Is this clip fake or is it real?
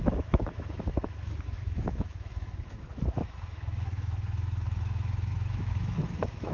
fake